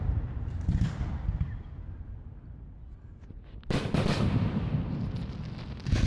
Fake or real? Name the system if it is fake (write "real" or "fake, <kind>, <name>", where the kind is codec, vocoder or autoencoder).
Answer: real